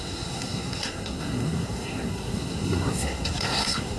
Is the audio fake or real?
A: fake